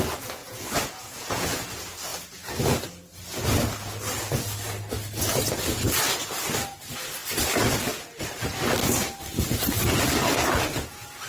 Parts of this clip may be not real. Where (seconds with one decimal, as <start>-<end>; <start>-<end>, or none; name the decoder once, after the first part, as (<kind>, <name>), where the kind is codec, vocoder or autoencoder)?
0.4-1.7 (vocoder, Vocos)